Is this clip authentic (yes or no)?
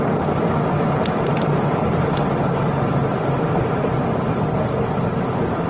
yes